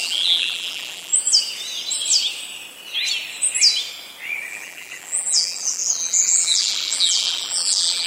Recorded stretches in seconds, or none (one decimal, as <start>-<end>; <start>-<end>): 1.1-4.5